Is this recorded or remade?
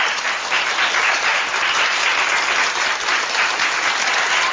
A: recorded